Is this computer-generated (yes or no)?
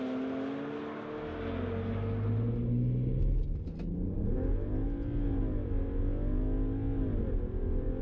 no